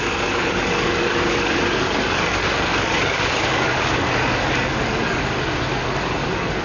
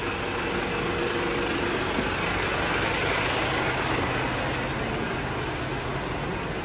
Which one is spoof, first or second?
first